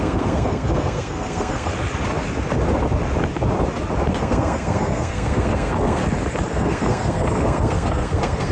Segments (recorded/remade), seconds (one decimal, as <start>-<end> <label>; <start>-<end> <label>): 0.0-1.7 remade; 1.7-4.1 recorded; 4.1-6.0 remade; 6.0-6.5 recorded; 6.5-8.5 remade